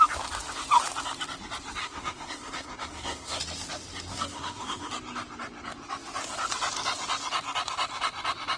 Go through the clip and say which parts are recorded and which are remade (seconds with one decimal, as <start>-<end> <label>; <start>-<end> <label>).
0.0-1.8 recorded; 1.8-3.4 remade; 3.4-4.1 recorded; 4.1-4.9 remade; 4.9-8.6 recorded